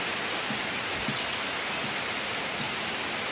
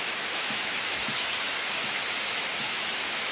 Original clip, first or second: first